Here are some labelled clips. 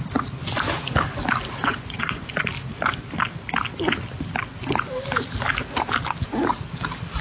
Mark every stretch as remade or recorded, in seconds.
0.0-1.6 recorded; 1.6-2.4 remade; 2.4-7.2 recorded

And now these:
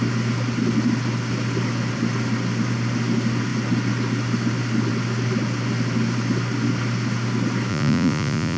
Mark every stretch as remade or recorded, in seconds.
0.0-7.7 recorded; 7.7-8.6 remade

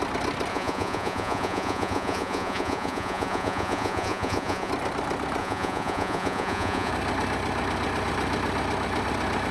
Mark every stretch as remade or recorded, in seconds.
0.0-0.5 recorded; 0.5-4.7 remade; 4.7-5.4 recorded; 5.4-6.9 remade; 6.9-9.5 recorded

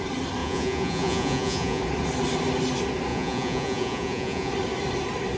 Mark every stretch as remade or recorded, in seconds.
0.0-0.4 recorded; 0.4-1.8 remade; 1.8-3.1 recorded; 3.1-4.5 remade; 4.5-5.4 recorded

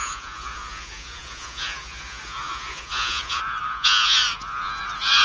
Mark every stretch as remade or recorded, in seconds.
0.0-5.2 remade

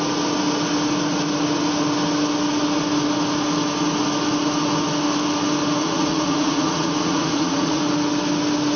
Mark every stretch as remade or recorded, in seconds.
0.0-5.8 recorded; 5.8-7.8 remade; 7.8-8.8 recorded